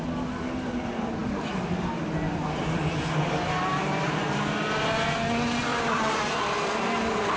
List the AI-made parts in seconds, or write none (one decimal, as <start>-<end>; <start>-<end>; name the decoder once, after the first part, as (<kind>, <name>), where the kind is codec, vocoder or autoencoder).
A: 1.2-1.9 (vocoder, BigVGAN v2); 5.7-6.3